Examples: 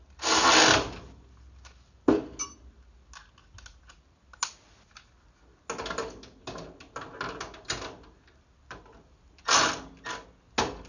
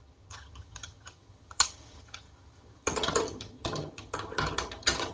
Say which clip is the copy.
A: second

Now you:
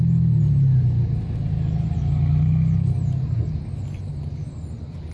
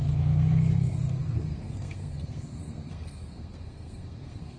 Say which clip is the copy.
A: second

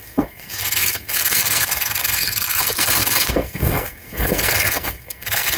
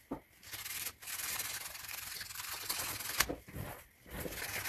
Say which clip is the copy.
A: first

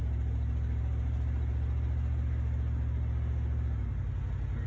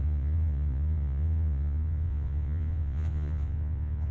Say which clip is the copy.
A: second